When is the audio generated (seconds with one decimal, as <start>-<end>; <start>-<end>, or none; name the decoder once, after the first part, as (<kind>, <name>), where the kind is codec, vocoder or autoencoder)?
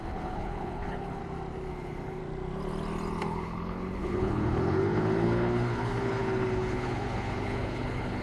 0.0-1.2 (codec, HILCodec); 1.7-2.2; 3.2-8.2